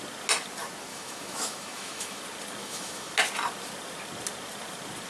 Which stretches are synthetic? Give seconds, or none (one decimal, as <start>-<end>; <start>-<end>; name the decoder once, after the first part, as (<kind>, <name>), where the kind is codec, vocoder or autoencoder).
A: 0.9-2.2 (autoencoder, DAC-VAE); 2.6-3.1

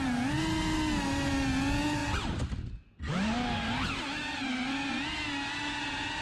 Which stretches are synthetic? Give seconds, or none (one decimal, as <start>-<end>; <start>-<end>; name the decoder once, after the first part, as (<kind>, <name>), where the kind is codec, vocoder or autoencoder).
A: none